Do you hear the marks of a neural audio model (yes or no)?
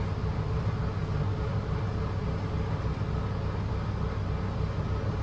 no